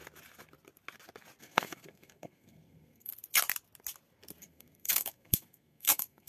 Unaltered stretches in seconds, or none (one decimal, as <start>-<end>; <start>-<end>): 0.0-1.4; 3.1-4.4

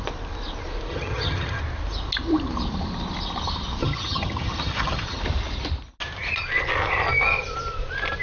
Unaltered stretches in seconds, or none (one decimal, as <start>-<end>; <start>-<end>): 0.0-0.9; 1.6-3.8; 5.2-8.2

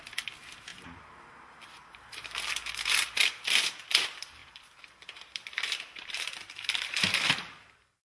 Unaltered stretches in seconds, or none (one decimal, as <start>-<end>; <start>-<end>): 0.0-1.8; 3.0-4.4; 7.2-8.2

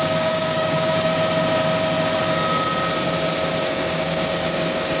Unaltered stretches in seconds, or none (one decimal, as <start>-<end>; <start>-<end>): 1.1-3.7

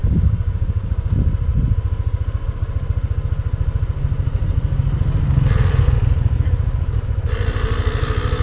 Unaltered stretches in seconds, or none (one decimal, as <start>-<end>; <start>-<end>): 1.1-8.4

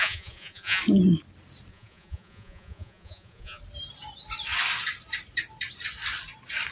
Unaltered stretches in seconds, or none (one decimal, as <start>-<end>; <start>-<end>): 0.8-1.7; 3.6-6.7

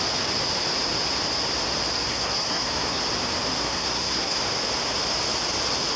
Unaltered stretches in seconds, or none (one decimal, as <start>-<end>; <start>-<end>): 0.0-2.1; 3.0-3.6; 4.4-6.0

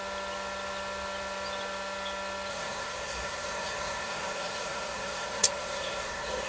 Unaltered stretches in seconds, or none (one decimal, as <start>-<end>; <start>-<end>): 0.0-2.5